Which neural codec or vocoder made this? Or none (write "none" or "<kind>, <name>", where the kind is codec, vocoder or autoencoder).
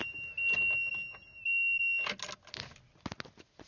none